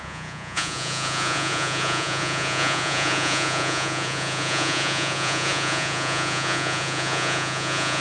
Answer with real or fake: fake